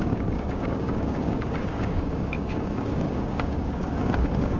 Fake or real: fake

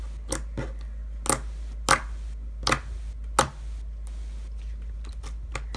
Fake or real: real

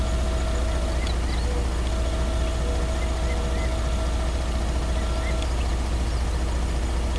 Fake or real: real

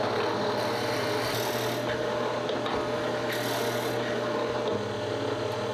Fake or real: real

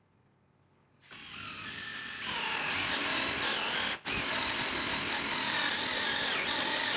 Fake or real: real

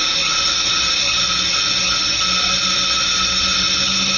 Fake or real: real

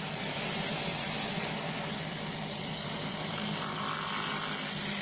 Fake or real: real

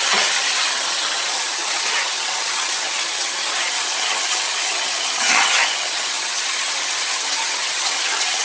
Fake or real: fake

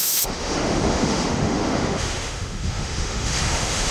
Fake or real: fake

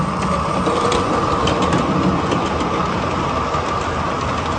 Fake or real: real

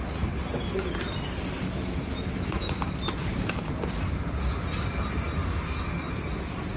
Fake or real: real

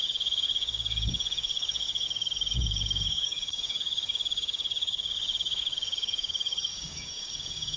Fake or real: fake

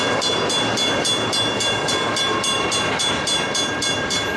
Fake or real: real